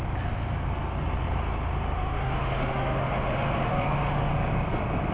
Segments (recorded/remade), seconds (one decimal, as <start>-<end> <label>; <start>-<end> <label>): 0.0-1.9 recorded; 1.9-4.3 remade; 4.3-5.1 recorded